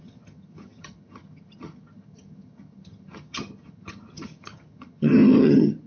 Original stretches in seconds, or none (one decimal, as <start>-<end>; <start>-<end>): none